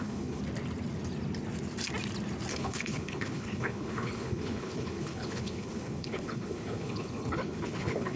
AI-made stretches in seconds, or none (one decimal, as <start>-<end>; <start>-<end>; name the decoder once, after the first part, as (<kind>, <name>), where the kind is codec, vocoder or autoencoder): 0.0-0.4 (codec, HILCodec); 2.5-8.2